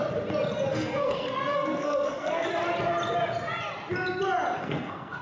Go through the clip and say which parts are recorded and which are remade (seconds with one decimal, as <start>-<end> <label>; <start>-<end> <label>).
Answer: 0.0-0.7 recorded; 0.7-2.5 remade; 2.5-4.6 recorded; 4.6-5.2 remade